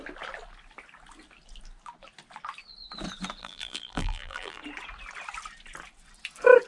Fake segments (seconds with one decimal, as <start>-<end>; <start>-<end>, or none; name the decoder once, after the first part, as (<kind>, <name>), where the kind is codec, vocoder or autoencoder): 3.4-4.6 (vocoder, BigVGAN v2)